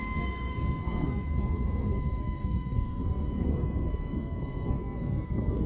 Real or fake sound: fake